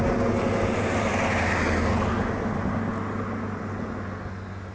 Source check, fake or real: real